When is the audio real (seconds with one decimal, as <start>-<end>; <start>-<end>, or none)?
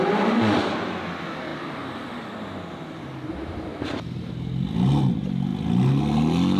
0.0-1.5; 4.3-6.6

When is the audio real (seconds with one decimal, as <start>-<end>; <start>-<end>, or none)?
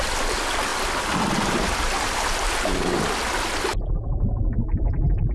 0.0-5.3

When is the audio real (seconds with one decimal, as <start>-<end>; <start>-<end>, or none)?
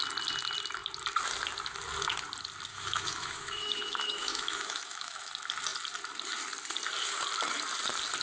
0.0-2.7; 5.3-8.2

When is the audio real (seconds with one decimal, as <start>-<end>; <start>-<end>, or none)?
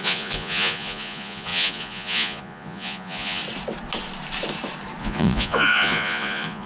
3.4-5.0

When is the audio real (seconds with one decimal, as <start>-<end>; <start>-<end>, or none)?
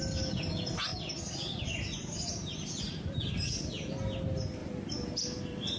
0.0-5.8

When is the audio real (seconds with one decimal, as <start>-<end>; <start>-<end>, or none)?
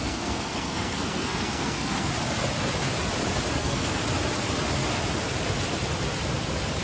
2.1-3.5; 4.0-6.8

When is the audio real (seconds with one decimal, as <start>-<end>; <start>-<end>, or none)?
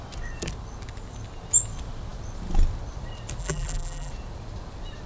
0.0-3.4; 4.1-5.1